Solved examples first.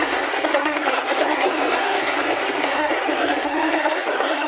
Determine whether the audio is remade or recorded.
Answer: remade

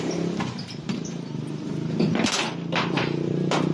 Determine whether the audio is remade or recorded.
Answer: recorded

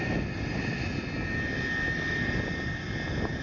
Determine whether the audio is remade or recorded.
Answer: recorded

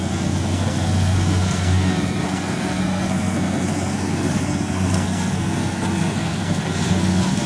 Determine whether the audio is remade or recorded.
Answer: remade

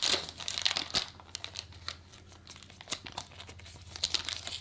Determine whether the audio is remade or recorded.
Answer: recorded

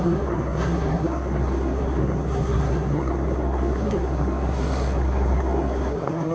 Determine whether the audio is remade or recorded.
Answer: remade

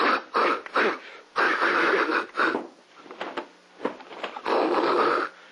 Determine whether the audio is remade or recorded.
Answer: recorded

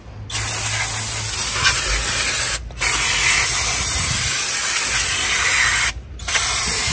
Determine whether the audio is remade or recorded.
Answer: recorded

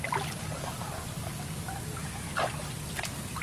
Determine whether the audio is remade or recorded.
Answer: recorded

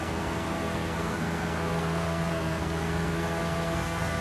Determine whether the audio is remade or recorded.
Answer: remade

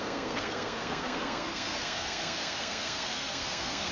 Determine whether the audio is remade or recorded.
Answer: remade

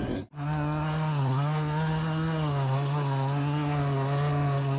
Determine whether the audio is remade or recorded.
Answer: remade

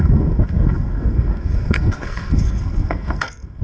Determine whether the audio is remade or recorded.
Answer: remade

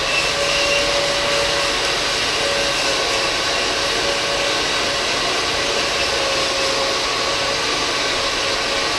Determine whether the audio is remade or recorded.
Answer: recorded